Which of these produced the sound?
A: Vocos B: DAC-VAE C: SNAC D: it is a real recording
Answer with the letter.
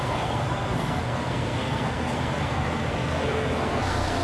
C